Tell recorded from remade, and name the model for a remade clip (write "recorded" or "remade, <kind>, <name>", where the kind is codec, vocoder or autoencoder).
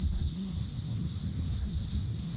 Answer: remade, codec, SNAC